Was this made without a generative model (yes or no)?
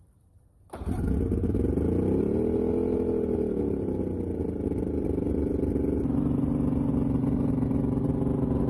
yes